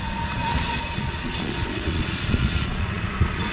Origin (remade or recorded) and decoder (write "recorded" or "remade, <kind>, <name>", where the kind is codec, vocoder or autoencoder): remade, vocoder, Vocos